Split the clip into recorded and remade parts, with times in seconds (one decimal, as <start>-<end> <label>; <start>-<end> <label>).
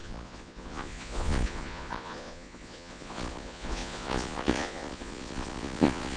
0.0-6.2 remade